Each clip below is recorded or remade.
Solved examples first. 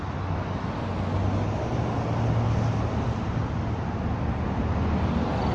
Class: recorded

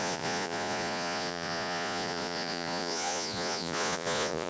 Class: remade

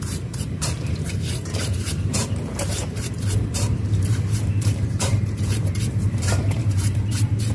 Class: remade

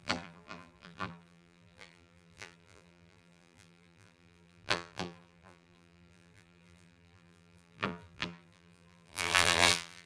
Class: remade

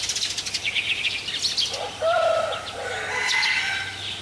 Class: recorded